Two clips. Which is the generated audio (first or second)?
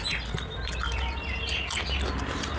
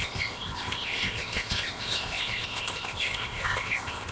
second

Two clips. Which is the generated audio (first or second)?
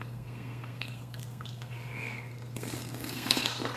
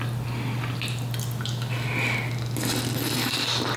first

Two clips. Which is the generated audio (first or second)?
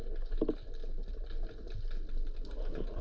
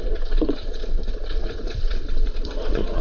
second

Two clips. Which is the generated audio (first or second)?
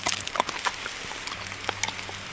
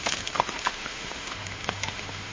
second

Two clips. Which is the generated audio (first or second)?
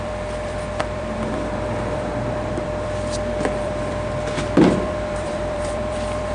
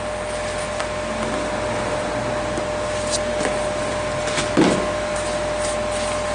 first